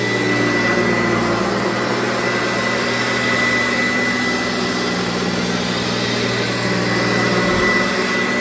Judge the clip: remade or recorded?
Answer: recorded